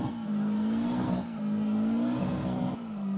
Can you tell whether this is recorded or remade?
remade